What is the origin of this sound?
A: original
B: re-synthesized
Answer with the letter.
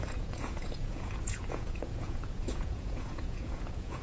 B